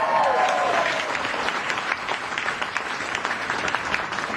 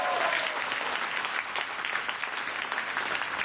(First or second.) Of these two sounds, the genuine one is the second